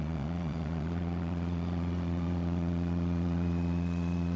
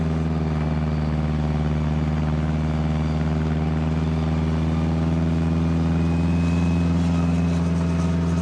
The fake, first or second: first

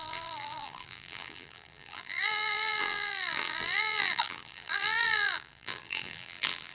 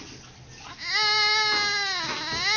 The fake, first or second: first